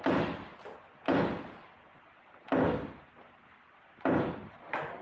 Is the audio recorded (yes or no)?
yes